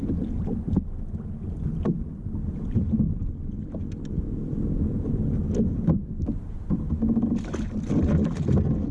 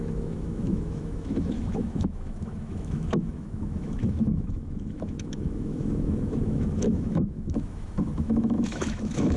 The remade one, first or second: second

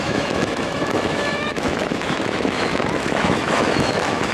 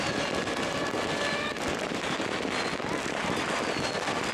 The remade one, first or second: first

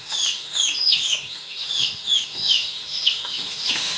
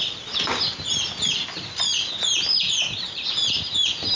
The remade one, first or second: first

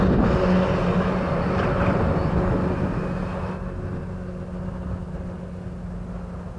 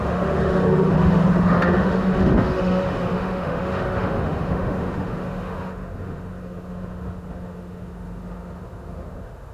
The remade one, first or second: second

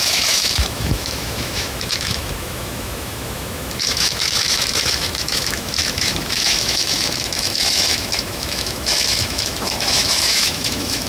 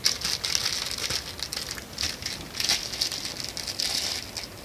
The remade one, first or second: first